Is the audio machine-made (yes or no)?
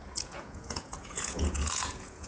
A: yes